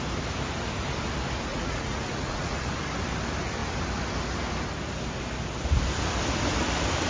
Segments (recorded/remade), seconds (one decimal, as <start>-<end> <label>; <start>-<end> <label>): 0.0-1.5 recorded; 1.5-2.6 remade; 2.6-7.1 recorded